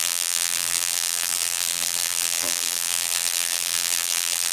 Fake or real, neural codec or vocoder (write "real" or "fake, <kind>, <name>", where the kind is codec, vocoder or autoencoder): fake, vocoder, BigVGAN v2